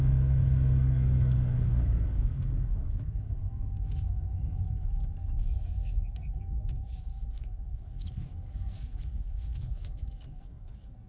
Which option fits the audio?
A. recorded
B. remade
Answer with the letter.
B